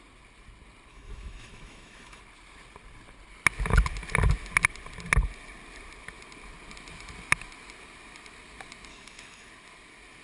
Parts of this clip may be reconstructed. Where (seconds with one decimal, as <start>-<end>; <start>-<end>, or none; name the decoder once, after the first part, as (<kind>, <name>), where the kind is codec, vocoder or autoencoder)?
0.9-2.2 (autoencoder, DAC-VAE); 8.9-9.5